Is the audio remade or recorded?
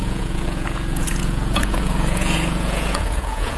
remade